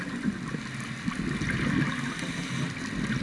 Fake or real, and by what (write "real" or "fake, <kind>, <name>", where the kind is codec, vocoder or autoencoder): real